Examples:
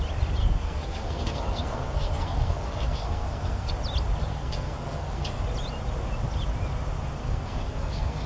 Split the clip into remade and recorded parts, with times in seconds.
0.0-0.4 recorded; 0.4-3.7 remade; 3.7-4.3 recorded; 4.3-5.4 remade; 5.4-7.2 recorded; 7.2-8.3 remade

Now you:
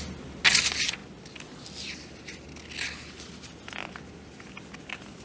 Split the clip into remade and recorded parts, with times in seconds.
0.0-5.2 recorded

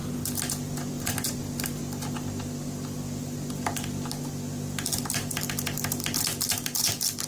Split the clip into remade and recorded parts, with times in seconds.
0.0-1.8 remade; 1.8-2.8 recorded; 2.8-7.3 remade

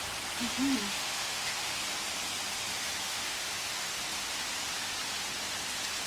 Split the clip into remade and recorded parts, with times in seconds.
0.0-0.8 recorded; 0.8-1.8 remade; 1.8-3.1 recorded; 3.1-4.0 remade; 4.0-6.1 recorded

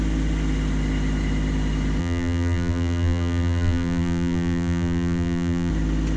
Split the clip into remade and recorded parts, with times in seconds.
0.0-2.0 recorded; 2.0-5.7 remade; 5.7-6.2 recorded

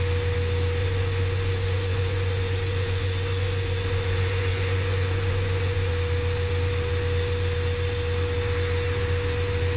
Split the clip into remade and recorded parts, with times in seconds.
0.0-0.8 recorded; 0.8-5.9 remade; 5.9-9.8 recorded